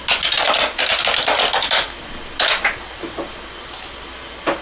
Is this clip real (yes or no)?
yes